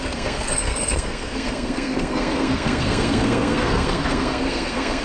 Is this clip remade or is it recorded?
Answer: remade